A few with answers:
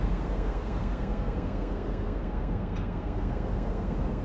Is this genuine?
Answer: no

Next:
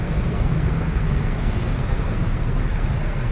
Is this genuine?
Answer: no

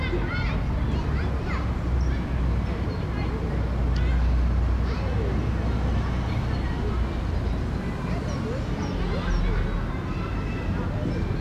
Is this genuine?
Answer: yes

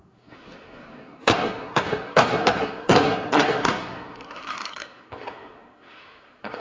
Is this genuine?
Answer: no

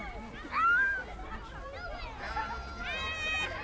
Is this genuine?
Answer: yes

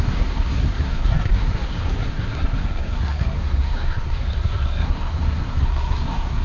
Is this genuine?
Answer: no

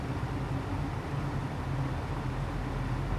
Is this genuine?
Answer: yes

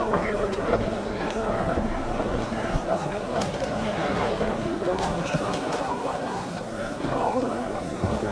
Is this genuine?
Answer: no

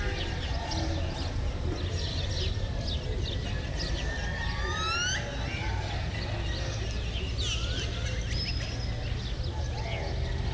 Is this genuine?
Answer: yes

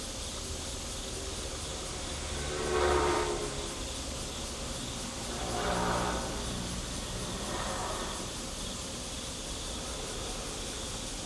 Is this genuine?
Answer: yes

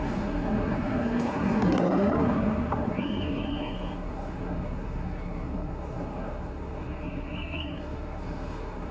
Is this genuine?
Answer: no